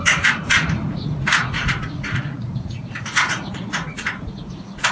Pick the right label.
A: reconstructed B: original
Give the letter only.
A